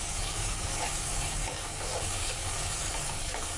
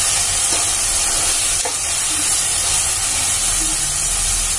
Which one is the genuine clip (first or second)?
second